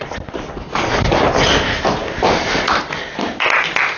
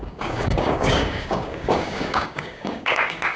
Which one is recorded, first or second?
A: first